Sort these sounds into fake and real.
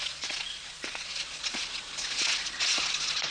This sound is fake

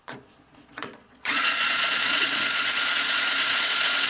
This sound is fake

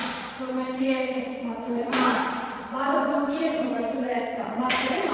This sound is fake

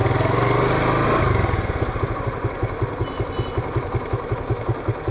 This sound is real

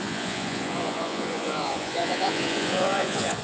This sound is fake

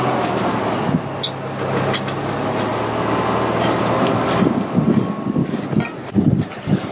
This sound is real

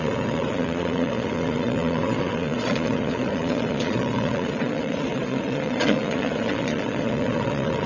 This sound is fake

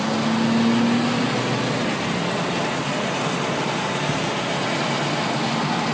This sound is real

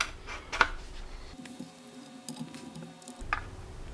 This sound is real